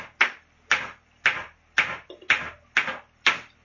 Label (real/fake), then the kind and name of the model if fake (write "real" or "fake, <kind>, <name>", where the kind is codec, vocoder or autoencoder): real